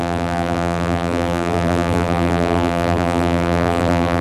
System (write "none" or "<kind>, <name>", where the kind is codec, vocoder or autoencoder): vocoder, BigVGAN v2